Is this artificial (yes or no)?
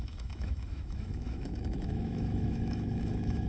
yes